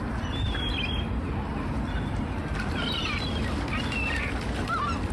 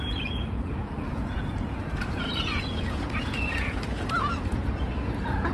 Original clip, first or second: first